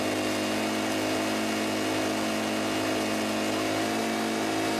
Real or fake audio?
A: real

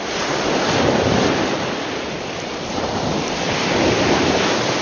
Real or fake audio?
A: fake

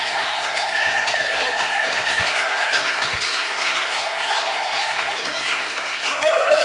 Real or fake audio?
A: fake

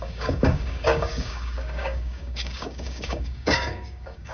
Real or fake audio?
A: fake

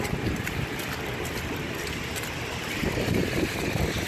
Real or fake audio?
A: real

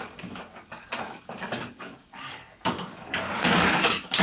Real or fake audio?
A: fake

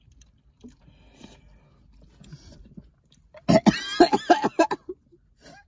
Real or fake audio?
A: real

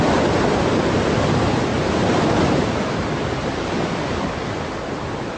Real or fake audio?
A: real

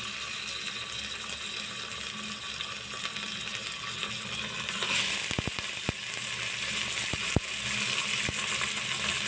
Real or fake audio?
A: real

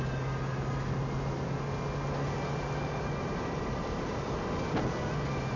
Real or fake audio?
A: real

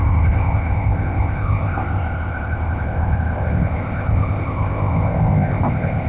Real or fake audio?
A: fake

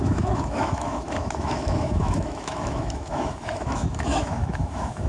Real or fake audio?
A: fake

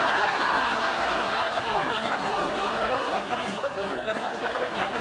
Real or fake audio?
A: fake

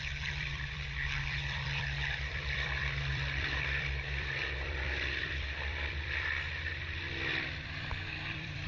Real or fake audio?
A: fake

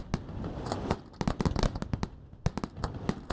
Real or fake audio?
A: real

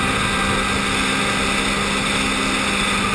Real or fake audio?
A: real